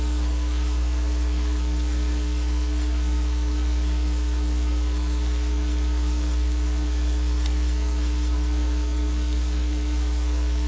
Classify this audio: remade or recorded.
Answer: remade